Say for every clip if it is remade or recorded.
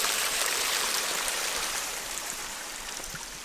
remade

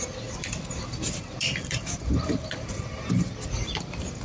recorded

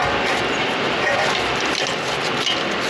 recorded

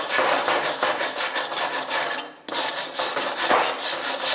recorded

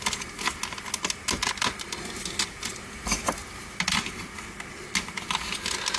recorded